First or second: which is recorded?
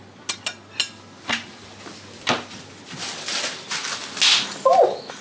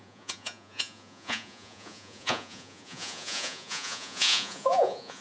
first